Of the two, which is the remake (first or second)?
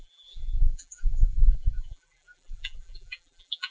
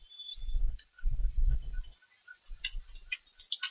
first